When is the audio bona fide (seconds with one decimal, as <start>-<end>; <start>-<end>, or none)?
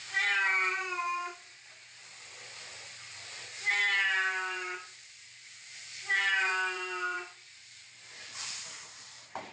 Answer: 2.1-3.7